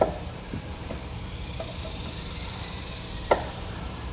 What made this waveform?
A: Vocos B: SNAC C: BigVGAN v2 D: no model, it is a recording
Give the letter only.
C